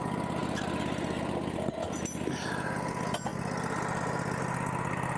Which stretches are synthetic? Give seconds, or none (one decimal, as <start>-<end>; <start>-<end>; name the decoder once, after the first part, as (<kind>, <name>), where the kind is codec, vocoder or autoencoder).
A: none